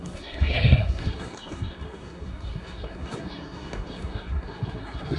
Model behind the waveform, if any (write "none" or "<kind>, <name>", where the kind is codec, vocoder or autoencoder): codec, SNAC